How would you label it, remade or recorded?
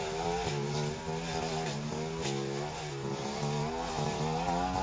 recorded